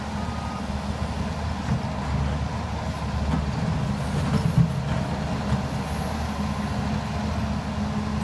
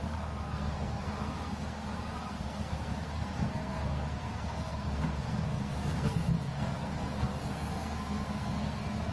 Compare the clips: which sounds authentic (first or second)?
first